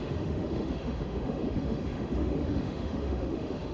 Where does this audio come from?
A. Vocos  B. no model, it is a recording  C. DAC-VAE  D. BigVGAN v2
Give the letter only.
C